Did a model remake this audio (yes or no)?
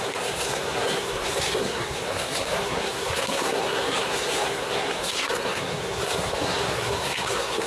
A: yes